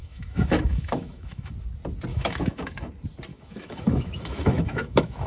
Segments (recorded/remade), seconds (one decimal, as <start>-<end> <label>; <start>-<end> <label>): 0.0-1.5 remade; 1.5-2.1 recorded; 2.1-2.9 remade; 2.9-3.3 recorded; 3.3-5.3 remade